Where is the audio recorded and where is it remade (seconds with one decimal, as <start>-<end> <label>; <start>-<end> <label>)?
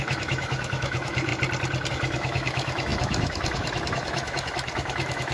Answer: 0.0-1.3 remade; 1.3-1.9 recorded; 1.9-5.3 remade